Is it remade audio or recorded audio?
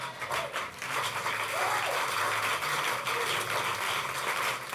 recorded